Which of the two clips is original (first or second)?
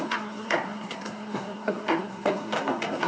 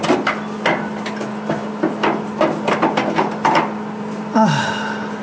second